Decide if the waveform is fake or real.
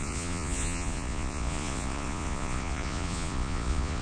fake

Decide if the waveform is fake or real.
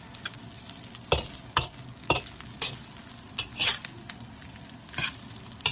real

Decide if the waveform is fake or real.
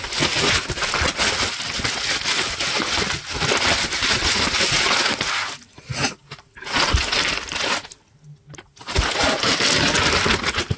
real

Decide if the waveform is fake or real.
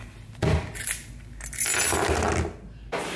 real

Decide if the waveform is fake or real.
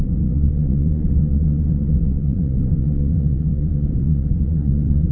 fake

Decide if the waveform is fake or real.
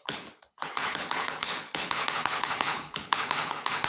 fake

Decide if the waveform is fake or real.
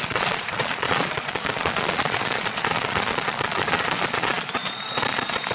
fake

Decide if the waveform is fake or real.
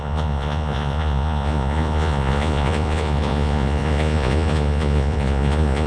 fake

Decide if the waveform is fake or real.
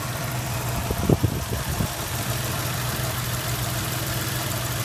fake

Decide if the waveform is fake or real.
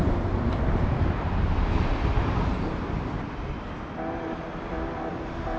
real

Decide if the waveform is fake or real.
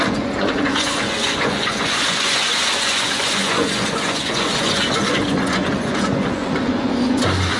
fake